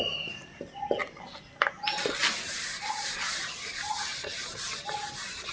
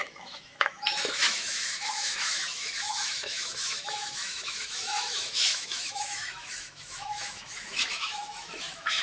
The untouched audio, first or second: first